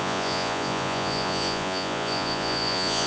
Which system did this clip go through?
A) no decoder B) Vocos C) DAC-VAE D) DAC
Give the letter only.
B